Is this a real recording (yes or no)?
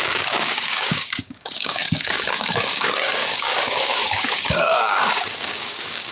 no